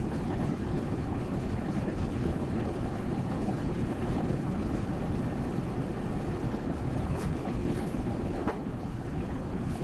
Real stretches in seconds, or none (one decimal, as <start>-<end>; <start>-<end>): 4.9-6.5